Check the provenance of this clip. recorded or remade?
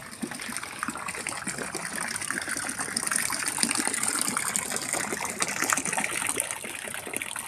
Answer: recorded